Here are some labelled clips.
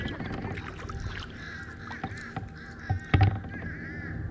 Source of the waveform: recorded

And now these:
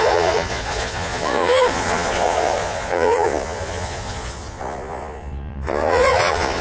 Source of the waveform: remade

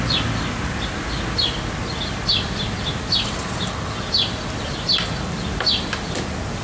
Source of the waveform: recorded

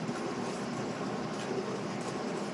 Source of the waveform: recorded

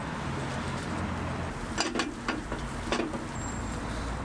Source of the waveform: recorded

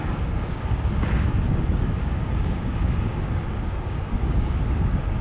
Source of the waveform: remade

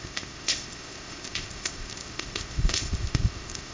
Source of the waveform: remade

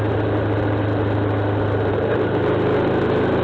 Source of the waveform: recorded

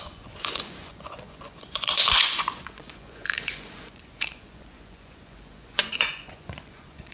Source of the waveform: remade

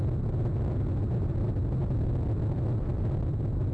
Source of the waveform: recorded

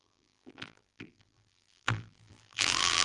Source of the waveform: remade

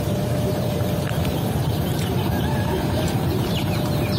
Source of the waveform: remade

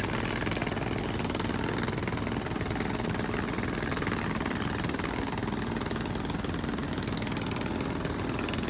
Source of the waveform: recorded